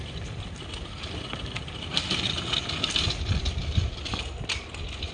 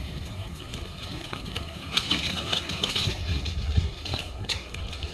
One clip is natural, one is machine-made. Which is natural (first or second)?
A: first